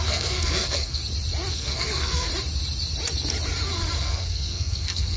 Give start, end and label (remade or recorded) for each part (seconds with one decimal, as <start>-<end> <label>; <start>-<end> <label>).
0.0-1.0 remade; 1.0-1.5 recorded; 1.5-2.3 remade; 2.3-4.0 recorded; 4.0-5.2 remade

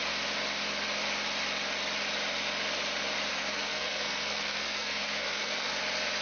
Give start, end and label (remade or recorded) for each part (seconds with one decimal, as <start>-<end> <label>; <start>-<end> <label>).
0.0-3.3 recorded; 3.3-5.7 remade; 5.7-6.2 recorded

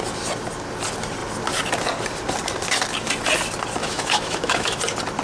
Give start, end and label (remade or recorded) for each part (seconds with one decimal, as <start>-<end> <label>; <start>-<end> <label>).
0.0-3.8 recorded; 3.8-4.8 remade; 4.8-5.2 recorded

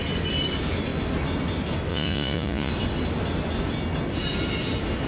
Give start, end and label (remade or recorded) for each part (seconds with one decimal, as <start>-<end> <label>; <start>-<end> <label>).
0.0-1.9 recorded; 1.9-2.7 remade; 2.7-5.1 recorded

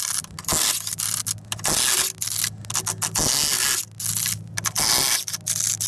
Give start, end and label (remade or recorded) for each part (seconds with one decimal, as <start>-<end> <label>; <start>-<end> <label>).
0.0-5.9 recorded